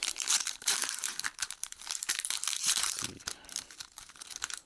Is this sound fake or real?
fake